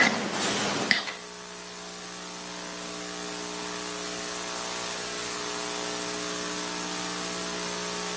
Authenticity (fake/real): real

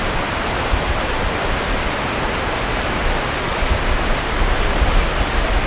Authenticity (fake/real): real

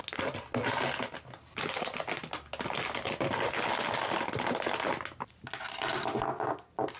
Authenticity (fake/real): real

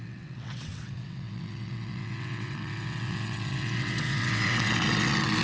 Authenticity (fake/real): fake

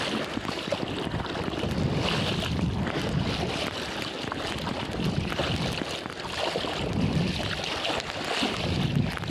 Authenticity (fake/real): real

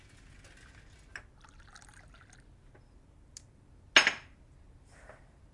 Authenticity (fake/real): real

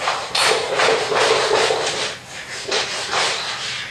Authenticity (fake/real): real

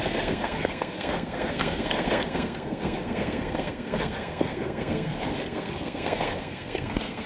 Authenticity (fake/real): fake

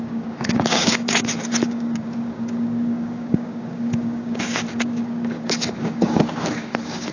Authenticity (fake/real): fake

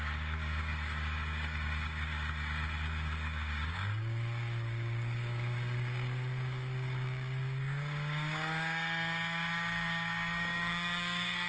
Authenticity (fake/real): fake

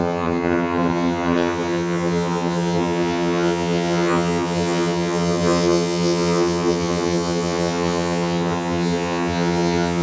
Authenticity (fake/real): fake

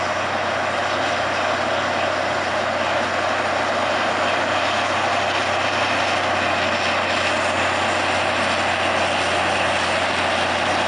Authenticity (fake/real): real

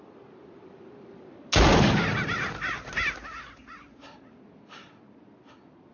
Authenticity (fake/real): real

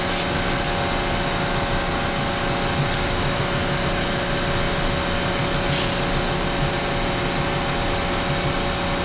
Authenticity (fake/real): real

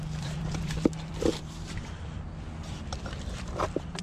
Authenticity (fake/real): fake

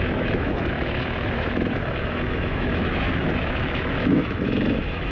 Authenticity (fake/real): fake